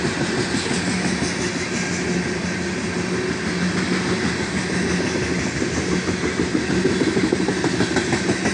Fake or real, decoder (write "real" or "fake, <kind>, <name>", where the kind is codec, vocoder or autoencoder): real